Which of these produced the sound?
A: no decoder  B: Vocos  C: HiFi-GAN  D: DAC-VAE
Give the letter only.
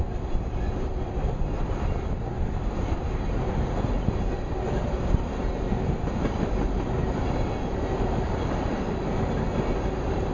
A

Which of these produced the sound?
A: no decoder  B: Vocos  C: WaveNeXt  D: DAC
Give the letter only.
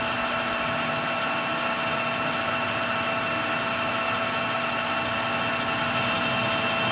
A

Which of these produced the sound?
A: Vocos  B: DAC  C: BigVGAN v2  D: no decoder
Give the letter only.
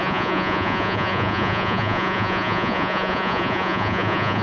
A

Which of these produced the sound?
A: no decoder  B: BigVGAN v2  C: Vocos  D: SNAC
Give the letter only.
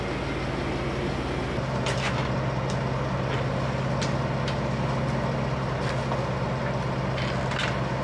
A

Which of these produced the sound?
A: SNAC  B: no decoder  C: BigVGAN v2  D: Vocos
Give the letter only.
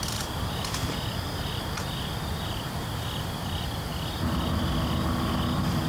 B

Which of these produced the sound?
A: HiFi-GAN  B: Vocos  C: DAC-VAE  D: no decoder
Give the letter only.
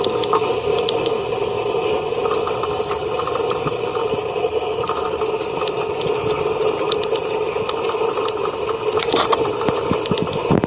D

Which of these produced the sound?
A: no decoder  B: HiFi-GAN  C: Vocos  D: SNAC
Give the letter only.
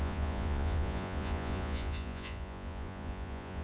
C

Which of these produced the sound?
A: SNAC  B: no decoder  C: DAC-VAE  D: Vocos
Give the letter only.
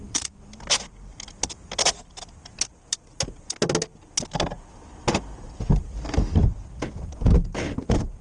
B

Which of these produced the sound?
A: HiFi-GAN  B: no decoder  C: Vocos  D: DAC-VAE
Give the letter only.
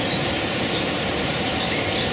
B